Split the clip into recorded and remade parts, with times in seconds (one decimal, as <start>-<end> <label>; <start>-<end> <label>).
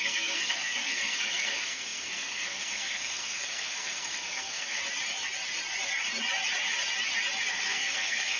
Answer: 0.0-4.8 remade; 4.8-7.5 recorded; 7.5-8.4 remade